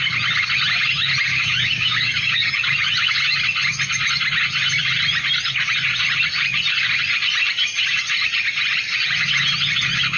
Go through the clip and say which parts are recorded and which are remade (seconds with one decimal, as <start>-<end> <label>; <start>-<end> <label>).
0.0-1.3 recorded; 1.3-2.5 remade; 2.5-10.2 recorded